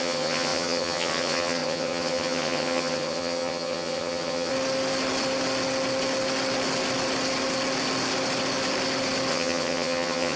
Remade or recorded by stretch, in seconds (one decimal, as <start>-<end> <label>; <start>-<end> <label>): 0.0-4.5 remade; 4.5-9.3 recorded; 9.3-10.4 remade